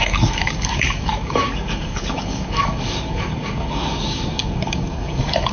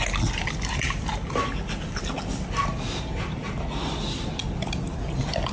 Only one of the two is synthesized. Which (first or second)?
first